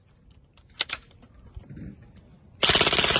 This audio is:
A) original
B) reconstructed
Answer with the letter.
A